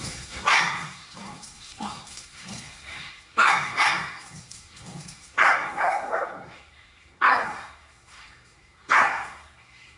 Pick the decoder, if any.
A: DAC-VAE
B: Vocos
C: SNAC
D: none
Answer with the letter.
C